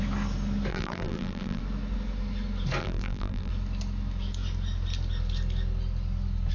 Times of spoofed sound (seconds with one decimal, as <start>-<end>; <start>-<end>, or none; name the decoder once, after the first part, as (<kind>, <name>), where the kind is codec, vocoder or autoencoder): 0.7-1.6 (vocoder, BigVGAN v2); 2.8-3.5